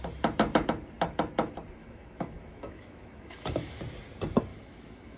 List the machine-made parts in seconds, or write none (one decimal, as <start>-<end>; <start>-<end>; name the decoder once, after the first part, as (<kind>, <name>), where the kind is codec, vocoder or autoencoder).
1.8-3.8 (autoencoder, DAC-VAE); 4.5-5.2